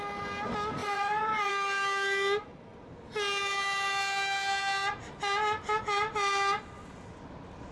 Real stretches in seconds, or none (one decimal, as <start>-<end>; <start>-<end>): 0.0-0.8; 1.5-7.7